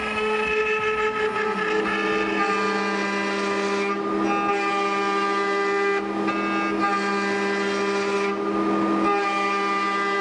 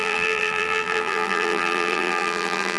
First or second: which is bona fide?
first